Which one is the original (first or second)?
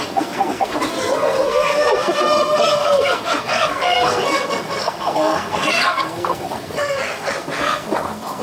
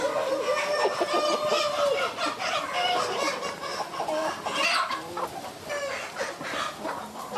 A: second